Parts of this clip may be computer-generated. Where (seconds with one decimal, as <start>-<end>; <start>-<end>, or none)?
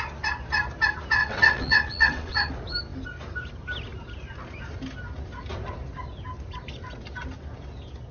1.2-2.5